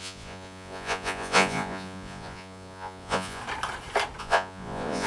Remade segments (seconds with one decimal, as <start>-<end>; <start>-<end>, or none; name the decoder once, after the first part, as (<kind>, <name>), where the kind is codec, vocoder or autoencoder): 0.0-3.4 (vocoder, Vocos); 4.2-5.1